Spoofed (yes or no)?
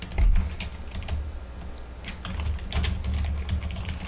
no